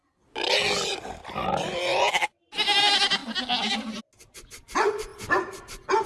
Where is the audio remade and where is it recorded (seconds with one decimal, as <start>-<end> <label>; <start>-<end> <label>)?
0.0-6.1 recorded